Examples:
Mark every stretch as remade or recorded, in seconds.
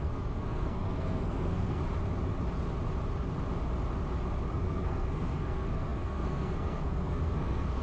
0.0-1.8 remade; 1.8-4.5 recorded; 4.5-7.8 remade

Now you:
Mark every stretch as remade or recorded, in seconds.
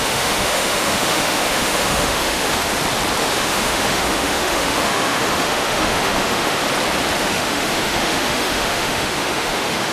0.0-2.7 remade; 2.7-3.2 recorded; 3.2-6.6 remade; 6.6-7.2 recorded; 7.2-9.9 remade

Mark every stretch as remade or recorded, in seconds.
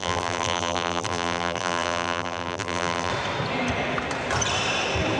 0.0-3.1 remade; 3.1-5.2 recorded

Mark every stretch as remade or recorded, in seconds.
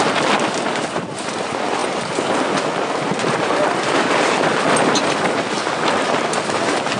0.0-1.8 recorded; 1.8-2.4 remade; 2.4-7.0 recorded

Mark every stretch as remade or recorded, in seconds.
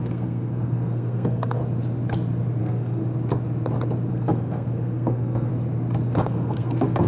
0.0-1.6 remade; 1.6-2.6 recorded; 2.6-3.0 remade; 3.0-4.1 recorded; 4.1-5.5 remade; 5.5-6.2 recorded; 6.2-7.1 remade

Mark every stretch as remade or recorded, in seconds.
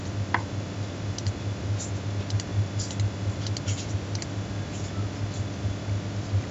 0.0-6.5 recorded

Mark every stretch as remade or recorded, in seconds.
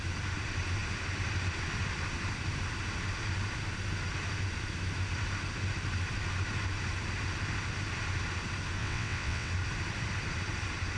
0.0-8.8 recorded; 8.8-9.5 remade; 9.5-11.0 recorded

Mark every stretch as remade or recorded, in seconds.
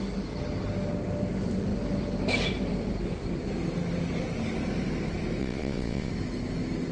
0.0-5.4 recorded; 5.4-6.1 remade; 6.1-6.9 recorded